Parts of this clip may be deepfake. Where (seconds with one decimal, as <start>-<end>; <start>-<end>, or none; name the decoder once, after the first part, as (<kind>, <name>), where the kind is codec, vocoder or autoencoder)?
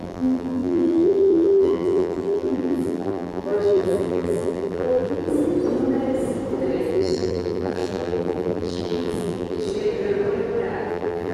0.0-5.3 (vocoder, BigVGAN v2); 6.9-9.7; 10.9-11.3